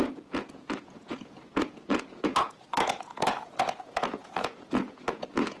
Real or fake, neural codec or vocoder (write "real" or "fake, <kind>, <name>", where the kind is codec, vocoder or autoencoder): fake, vocoder, Vocos